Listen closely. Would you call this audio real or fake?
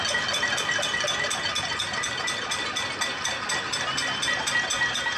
real